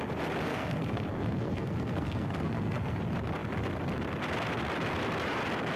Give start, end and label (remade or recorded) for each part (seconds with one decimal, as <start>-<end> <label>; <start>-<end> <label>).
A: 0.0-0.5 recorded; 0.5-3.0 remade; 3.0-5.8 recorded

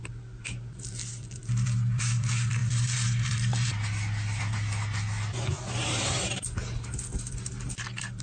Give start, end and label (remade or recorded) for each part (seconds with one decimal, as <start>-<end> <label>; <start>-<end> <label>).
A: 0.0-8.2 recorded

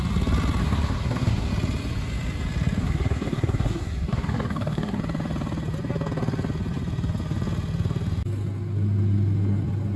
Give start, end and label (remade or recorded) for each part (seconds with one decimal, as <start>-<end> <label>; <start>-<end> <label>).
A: 0.0-0.6 recorded; 0.6-1.5 remade; 1.5-2.8 recorded; 2.8-5.0 remade; 5.0-10.0 recorded

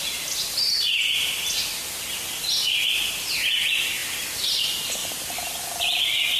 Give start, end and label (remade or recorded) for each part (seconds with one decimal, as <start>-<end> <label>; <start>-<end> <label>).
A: 0.0-6.4 recorded

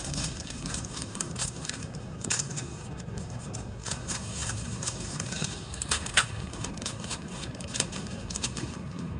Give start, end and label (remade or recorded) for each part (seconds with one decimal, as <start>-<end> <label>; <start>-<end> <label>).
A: 0.0-9.2 remade